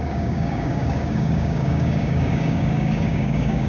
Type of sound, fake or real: fake